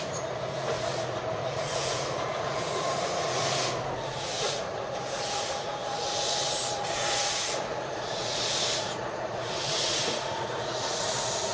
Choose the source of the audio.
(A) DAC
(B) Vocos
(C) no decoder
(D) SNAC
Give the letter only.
B